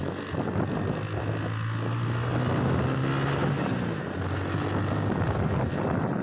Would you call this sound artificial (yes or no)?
no